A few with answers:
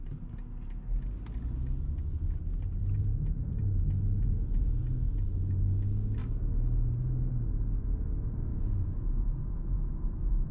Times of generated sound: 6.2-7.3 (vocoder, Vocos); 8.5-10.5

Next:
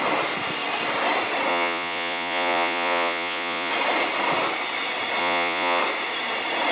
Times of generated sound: 1.5-3.7 (vocoder, Vocos); 5.2-5.8

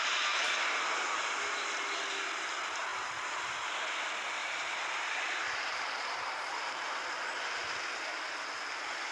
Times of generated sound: 4.4-7.1 (vocoder, BigVGAN v2)

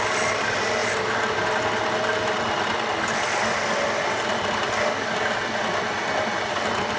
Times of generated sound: none

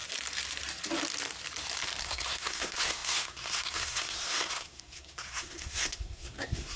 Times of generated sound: 2.0-6.8 (codec, SNAC)